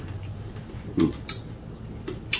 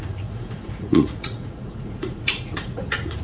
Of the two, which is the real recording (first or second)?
first